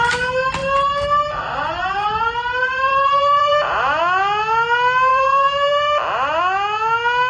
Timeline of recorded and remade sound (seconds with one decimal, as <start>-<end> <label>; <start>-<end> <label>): 0.0-2.6 recorded; 2.6-4.0 remade; 4.0-5.1 recorded; 5.1-6.4 remade; 6.4-7.3 recorded